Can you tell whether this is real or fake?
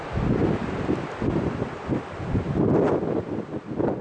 fake